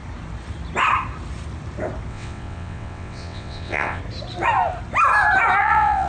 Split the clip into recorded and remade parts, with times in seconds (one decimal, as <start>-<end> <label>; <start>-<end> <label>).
0.0-2.1 recorded; 2.1-4.0 remade; 4.0-5.6 recorded; 5.6-6.1 remade